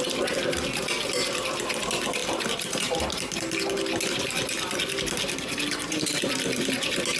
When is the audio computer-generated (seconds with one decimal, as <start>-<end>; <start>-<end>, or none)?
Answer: 2.2-3.0